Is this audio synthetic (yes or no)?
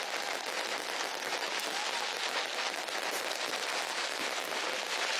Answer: no